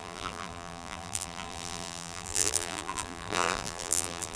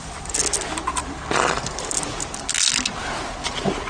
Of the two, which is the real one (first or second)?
second